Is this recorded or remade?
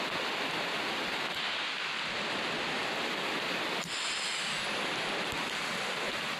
recorded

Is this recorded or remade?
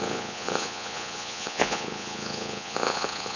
remade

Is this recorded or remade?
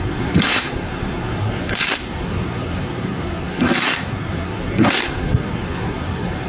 remade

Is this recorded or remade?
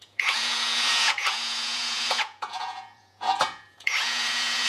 remade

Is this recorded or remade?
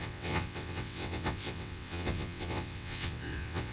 remade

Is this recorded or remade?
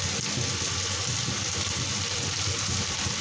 recorded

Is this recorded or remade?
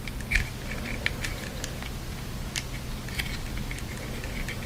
recorded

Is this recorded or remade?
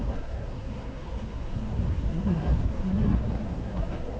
remade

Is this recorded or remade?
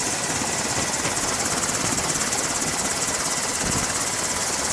recorded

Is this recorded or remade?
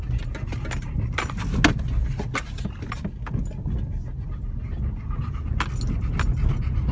recorded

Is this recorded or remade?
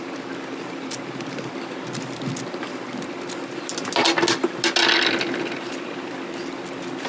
recorded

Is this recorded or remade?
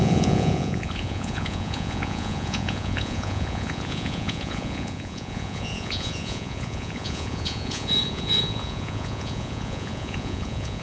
remade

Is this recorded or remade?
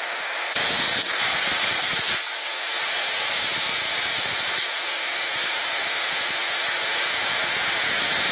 recorded